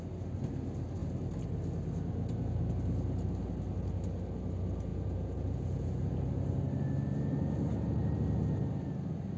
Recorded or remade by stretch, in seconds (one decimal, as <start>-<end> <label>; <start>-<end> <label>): 0.0-4.9 recorded; 4.9-6.3 remade; 6.3-9.4 recorded